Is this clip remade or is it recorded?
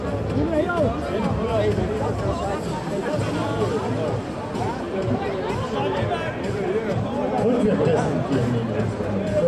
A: recorded